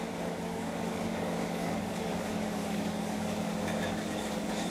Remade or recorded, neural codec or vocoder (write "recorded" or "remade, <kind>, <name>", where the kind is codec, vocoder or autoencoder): remade, codec, DAC